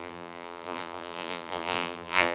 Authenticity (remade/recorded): remade